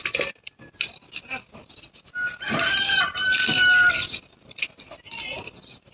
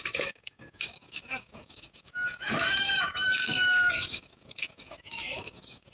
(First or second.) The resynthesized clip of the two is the second